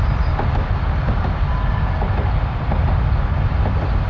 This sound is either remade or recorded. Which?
recorded